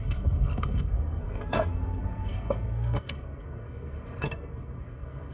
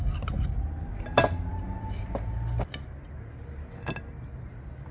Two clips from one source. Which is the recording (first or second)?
second